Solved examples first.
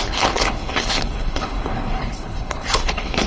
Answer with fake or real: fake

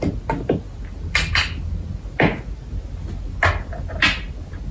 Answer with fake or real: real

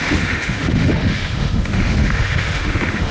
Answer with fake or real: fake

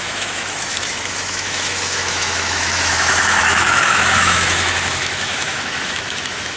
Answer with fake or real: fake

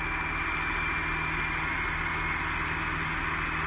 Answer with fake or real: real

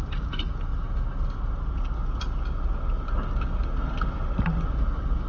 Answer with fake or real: real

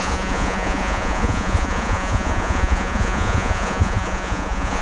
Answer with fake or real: fake